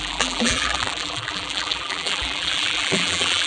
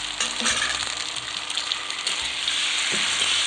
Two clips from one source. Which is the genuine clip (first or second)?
second